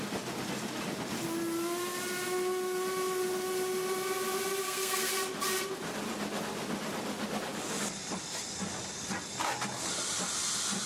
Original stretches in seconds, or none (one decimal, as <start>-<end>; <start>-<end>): 0.0-4.6; 5.1-10.9